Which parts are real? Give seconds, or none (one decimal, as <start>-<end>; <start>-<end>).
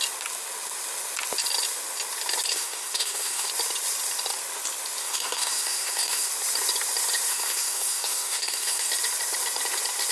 0.0-2.5; 3.5-5.0; 6.3-7.3; 8.9-10.1